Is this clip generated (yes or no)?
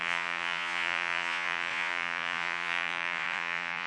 yes